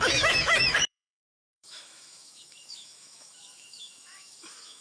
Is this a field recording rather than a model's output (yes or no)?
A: no